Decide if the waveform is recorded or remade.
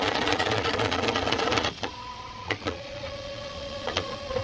remade